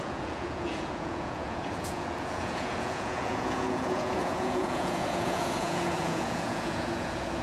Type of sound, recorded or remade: remade